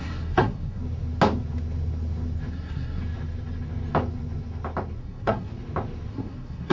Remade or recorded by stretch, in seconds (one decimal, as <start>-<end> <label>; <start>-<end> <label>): 0.0-0.8 remade; 0.8-2.5 recorded; 2.5-3.0 remade; 3.0-5.0 recorded; 5.0-5.5 remade; 5.5-6.1 recorded; 6.1-6.7 remade